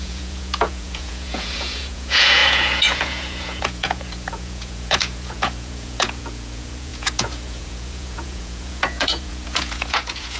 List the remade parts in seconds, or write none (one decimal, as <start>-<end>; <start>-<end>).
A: 0.0-10.4